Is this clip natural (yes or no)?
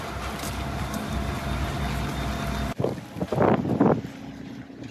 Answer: yes